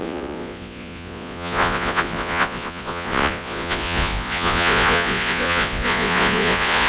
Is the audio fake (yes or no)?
yes